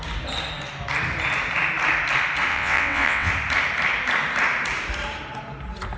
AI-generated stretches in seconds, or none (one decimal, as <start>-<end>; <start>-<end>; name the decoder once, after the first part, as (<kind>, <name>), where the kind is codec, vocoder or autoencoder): 2.5-3.3 (vocoder, WaveNeXt)